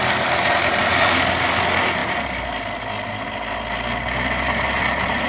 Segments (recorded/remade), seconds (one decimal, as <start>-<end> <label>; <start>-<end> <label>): 0.0-5.3 recorded